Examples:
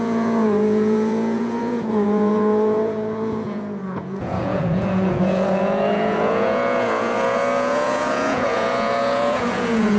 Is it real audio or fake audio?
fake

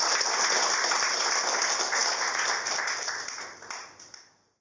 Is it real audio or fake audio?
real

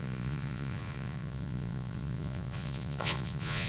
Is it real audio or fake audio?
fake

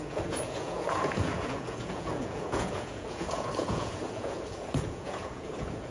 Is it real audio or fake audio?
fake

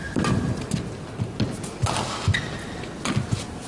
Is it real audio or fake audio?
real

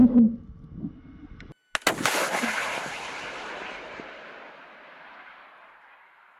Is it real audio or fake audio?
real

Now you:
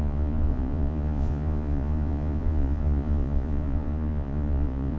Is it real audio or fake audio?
fake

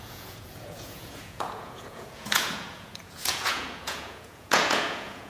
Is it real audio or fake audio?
fake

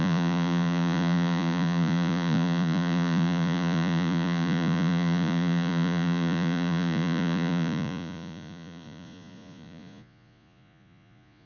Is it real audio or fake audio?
fake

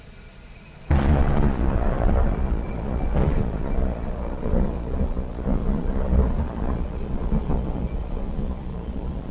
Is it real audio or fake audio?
fake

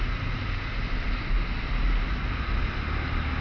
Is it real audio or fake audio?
real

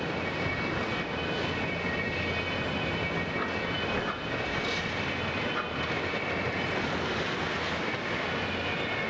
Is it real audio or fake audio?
real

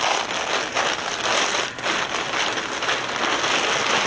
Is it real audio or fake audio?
real